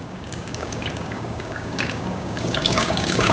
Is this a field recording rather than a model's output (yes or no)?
no